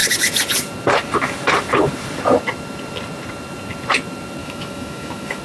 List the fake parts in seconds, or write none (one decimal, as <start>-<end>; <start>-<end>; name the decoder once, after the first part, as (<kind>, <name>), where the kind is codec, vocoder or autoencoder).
4.4-5.4 (autoencoder, DAC-VAE)